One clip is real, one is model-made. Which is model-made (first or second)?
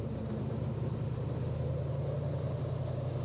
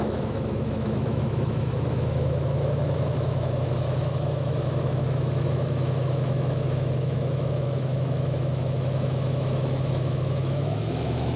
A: second